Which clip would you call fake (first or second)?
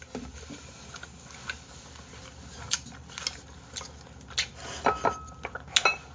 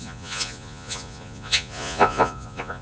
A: second